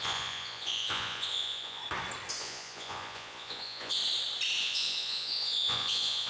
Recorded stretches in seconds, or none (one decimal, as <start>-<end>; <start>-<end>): 1.8-2.4; 4.0-4.6